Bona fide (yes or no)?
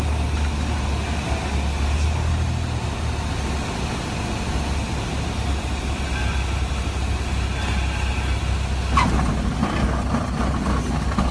yes